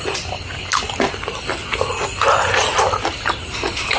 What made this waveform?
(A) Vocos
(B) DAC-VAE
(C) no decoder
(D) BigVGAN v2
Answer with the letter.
C